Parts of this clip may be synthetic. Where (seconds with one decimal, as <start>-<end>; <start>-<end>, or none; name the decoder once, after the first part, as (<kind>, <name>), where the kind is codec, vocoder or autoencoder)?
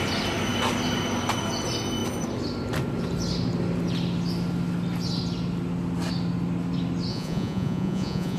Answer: 7.1-8.4 (vocoder, Vocos)